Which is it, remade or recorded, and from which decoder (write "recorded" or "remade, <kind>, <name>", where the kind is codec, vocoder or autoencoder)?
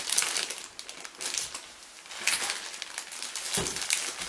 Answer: recorded